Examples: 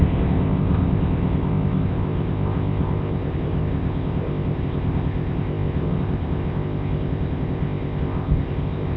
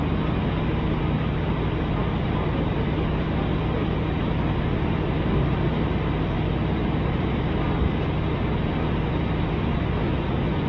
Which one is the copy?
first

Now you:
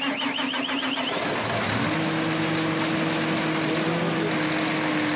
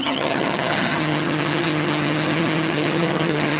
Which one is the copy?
second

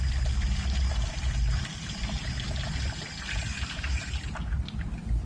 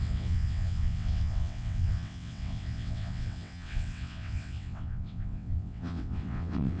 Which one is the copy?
second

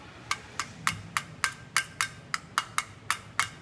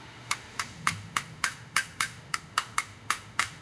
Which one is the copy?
second